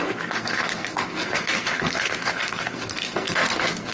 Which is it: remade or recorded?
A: remade